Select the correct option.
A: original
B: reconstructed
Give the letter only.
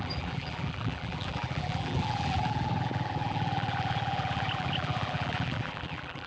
B